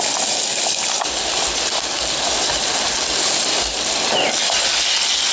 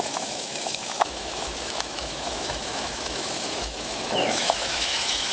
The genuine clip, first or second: first